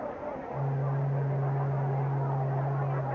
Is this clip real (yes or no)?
yes